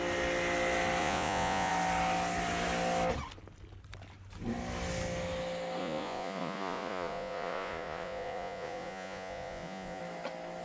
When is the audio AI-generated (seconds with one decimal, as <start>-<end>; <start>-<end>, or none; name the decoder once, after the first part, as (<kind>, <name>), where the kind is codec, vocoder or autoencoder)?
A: 1.0-1.7 (vocoder, Vocos); 5.8-10.0